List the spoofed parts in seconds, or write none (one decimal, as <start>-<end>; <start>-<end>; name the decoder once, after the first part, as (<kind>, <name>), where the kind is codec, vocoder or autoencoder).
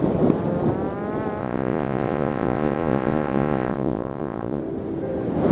1.4-4.6 (vocoder, Vocos)